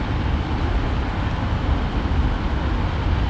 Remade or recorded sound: recorded